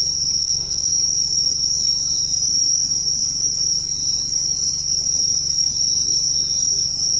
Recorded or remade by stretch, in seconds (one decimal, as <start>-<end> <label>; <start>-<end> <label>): 0.0-0.4 recorded; 0.4-0.9 remade; 0.9-7.2 recorded